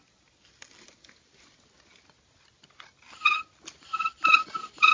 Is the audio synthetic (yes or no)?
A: no